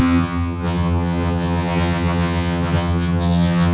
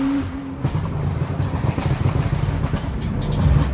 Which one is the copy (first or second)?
first